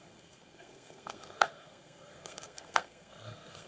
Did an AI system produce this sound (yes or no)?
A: yes